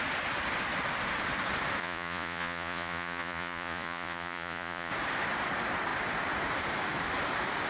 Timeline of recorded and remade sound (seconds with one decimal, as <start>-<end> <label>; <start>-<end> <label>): 0.0-1.8 recorded; 1.8-4.9 remade; 4.9-7.7 recorded